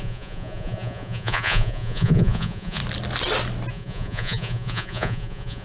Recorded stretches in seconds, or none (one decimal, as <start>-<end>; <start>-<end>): 2.8-3.7